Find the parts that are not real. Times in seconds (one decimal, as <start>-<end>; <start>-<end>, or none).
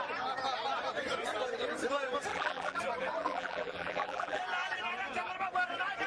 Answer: 2.3-2.8; 3.2-4.4